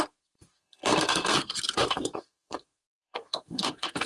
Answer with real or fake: fake